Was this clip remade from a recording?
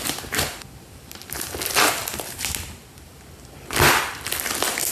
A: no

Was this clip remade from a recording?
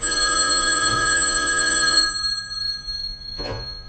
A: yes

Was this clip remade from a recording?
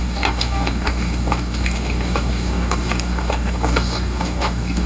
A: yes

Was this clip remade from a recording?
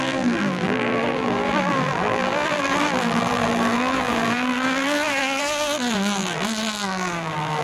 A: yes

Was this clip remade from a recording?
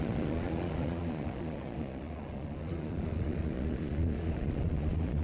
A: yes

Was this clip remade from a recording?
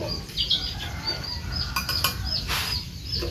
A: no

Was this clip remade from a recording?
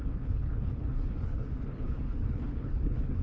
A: yes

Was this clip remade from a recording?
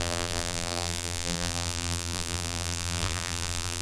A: yes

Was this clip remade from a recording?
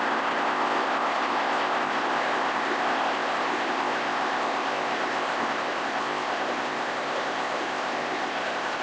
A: yes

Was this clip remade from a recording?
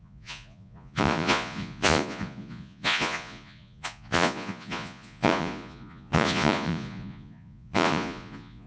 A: yes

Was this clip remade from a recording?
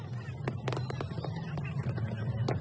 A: no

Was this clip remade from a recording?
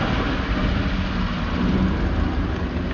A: no